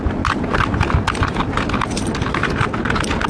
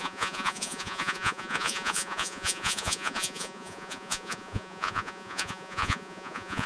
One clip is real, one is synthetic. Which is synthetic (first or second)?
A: second